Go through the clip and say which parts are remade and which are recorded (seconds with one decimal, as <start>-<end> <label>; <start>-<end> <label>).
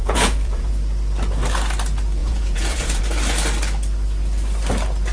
0.0-0.7 remade; 0.7-2.2 recorded; 2.2-3.0 remade; 3.0-5.1 recorded